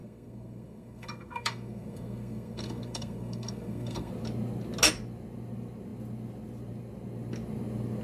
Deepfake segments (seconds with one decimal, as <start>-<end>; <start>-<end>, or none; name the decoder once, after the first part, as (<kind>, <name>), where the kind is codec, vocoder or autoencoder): 0.0-4.1 (codec, SNAC)